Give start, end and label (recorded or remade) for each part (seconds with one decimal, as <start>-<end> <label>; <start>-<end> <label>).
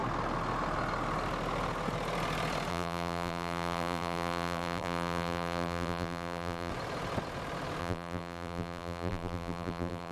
0.0-2.7 recorded; 2.7-6.7 remade; 6.7-7.8 recorded; 7.8-10.1 remade